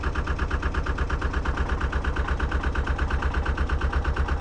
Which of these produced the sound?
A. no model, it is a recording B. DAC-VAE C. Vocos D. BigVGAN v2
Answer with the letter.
A